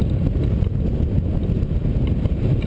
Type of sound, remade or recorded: recorded